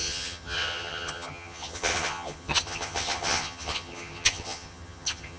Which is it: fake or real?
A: fake